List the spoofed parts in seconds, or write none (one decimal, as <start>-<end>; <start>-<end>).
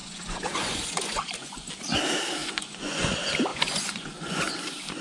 0.0-1.7; 2.4-3.1; 3.5-4.4